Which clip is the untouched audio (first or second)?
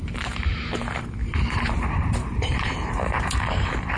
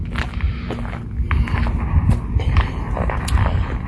second